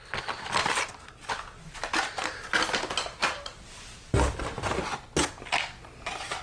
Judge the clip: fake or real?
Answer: real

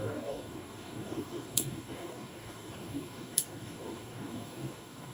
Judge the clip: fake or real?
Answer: fake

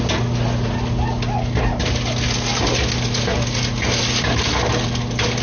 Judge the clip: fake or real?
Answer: real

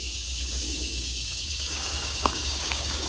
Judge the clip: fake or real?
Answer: fake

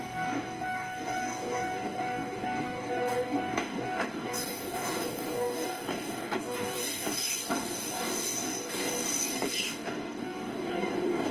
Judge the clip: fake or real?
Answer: fake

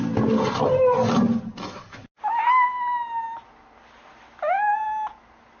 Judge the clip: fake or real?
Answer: real